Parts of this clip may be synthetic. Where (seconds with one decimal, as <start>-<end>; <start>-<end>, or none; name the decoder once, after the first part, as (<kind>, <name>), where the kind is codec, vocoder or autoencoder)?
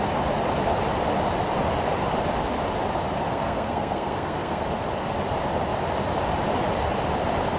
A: 3.3-4.6 (codec, SNAC)